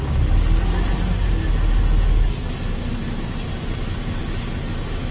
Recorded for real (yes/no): yes